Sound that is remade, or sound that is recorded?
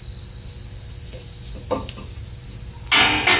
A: recorded